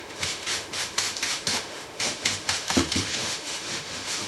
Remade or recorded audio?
remade